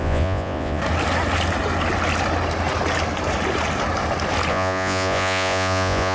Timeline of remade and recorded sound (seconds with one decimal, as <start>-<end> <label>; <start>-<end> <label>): 0.0-0.8 remade; 0.8-4.5 recorded; 4.5-6.1 remade